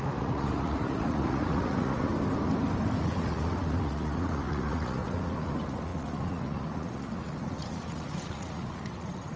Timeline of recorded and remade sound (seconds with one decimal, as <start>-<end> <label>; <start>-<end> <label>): 0.0-2.1 remade; 2.1-3.0 recorded; 3.0-9.4 remade